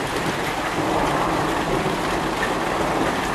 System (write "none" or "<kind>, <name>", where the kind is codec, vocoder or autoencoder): none